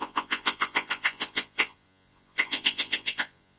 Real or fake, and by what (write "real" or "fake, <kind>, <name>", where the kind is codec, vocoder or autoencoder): fake, vocoder, Vocos